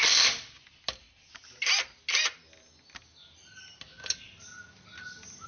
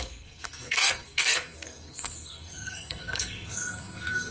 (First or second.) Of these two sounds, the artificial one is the second